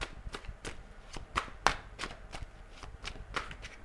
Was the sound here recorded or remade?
recorded